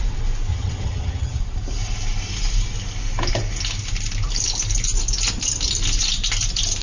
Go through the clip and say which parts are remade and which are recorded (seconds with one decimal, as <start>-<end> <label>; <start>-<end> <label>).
0.0-0.5 recorded; 0.5-1.4 remade; 1.4-6.8 recorded